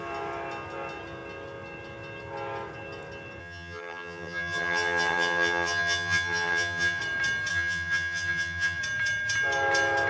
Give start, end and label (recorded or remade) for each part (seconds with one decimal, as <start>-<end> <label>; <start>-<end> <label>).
0.0-3.4 recorded; 3.4-7.0 remade; 7.0-7.5 recorded; 7.5-8.8 remade; 8.8-10.1 recorded